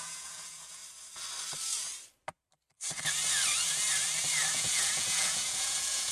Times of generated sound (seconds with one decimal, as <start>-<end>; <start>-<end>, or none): 0.0-0.8; 4.5-6.1